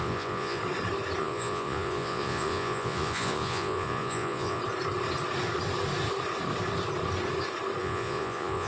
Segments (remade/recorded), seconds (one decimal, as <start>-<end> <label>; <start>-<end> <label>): 0.0-0.6 remade; 0.6-1.2 recorded; 1.2-4.6 remade; 4.6-7.8 recorded; 7.8-8.7 remade